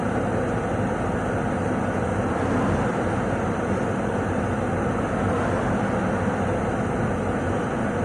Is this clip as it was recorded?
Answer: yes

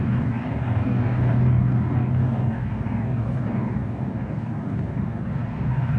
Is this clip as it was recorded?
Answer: no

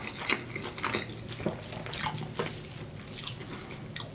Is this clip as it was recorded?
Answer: yes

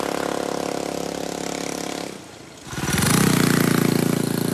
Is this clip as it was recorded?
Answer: yes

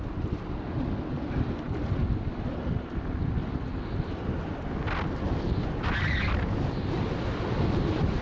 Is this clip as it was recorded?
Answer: yes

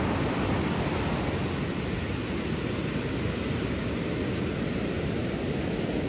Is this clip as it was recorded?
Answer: yes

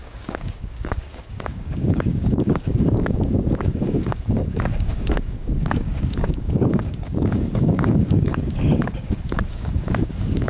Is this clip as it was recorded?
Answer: no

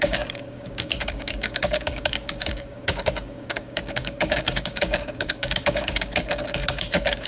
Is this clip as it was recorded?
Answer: no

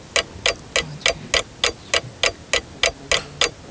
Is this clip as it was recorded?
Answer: yes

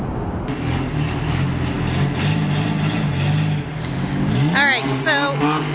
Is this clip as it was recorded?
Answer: yes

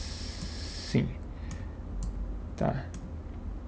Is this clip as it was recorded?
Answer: yes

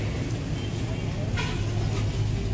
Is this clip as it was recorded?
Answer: yes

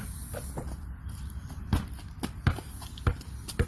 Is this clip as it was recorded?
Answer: yes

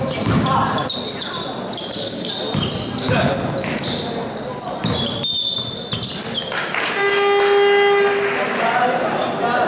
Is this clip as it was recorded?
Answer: yes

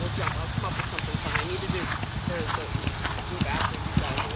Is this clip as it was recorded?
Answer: yes